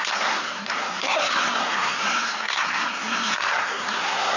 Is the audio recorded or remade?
remade